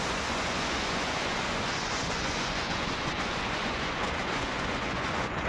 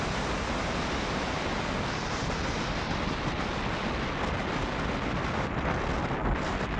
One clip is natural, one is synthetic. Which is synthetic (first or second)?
first